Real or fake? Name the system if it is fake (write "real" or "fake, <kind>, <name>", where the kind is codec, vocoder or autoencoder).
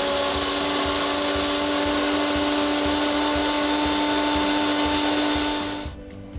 real